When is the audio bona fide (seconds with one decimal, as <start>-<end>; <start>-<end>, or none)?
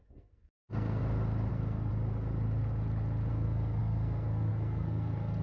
1.0-1.5; 1.9-3.3